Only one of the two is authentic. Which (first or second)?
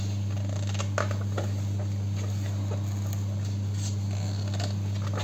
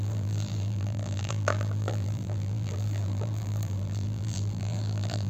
first